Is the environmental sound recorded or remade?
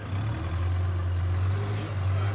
recorded